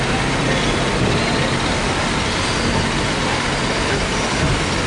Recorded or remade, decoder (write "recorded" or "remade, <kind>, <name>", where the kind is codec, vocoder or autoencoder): recorded